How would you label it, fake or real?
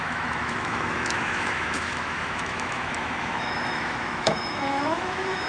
fake